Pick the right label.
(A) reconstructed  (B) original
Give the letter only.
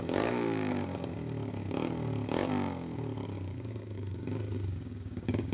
A